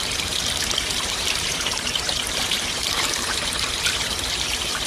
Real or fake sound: fake